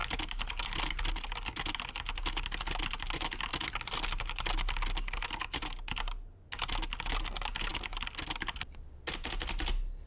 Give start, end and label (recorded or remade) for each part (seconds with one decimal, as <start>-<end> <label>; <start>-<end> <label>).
0.0-10.1 recorded